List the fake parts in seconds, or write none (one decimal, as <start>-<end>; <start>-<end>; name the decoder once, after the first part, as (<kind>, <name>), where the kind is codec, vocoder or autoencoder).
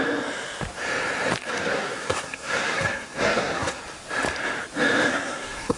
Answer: 1.4-3.8 (codec, SNAC); 5.1-5.8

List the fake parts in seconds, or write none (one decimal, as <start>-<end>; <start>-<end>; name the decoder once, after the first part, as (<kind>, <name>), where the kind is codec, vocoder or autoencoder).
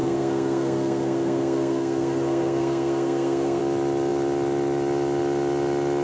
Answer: 0.0-3.6 (codec, SNAC)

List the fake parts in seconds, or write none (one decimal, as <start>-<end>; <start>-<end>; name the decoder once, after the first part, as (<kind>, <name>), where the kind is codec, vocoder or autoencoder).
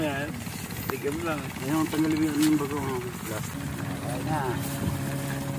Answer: none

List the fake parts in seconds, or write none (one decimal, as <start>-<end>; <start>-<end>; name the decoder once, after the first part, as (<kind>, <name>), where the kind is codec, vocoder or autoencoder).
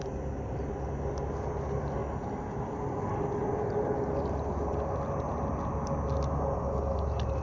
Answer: none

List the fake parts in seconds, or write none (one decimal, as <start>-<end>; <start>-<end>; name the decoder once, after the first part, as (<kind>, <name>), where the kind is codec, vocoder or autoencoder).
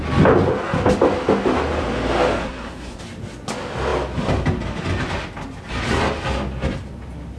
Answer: 2.4-3.0 (codec, SNAC)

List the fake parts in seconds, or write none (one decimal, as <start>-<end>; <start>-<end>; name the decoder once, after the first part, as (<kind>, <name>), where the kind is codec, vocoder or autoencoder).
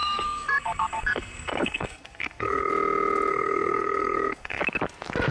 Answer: 0.0-2.7 (codec, SNAC); 3.3-4.6